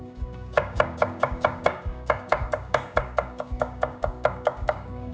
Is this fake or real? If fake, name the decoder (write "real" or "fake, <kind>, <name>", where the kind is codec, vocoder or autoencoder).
fake, codec, DAC